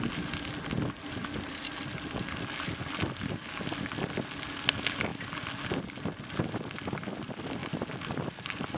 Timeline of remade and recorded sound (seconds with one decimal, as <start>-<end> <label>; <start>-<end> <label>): 0.0-7.6 recorded; 7.6-8.8 remade